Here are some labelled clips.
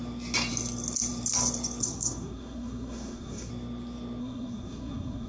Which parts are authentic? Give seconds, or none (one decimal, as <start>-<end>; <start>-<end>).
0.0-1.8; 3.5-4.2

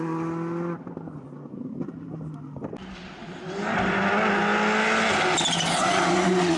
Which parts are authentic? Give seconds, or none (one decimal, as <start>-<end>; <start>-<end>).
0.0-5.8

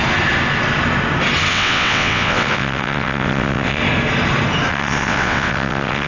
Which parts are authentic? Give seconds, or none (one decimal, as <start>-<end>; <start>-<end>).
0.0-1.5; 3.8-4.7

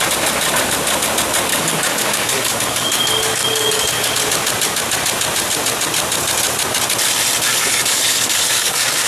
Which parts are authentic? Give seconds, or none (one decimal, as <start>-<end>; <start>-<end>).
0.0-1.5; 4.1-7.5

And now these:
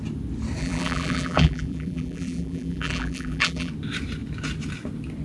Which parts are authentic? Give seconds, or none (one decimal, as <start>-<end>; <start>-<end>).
0.0-0.6; 3.7-5.2

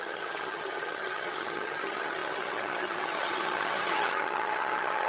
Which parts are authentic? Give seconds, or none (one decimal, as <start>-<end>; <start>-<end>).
none